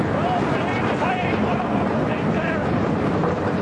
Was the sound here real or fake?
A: real